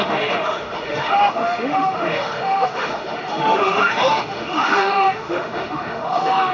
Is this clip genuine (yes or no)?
no